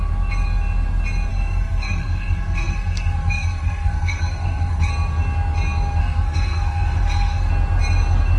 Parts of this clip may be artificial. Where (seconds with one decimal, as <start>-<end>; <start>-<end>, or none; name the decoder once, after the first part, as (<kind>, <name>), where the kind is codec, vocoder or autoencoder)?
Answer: 1.3-4.9 (codec, SNAC); 6.0-7.5